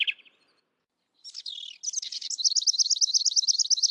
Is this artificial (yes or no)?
no